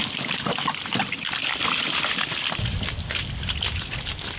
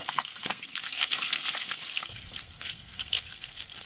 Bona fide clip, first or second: first